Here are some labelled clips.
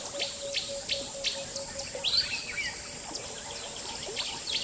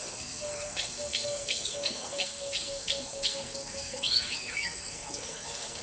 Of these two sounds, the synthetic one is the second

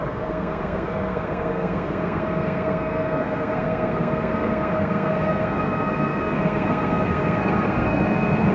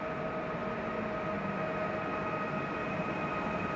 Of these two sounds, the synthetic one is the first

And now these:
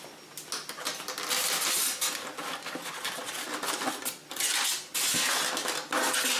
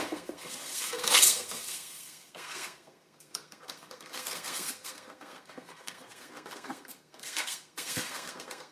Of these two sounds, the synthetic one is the second